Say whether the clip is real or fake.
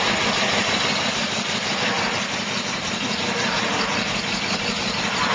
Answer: real